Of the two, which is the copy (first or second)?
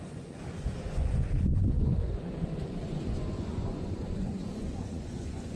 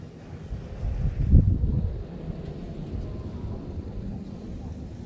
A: first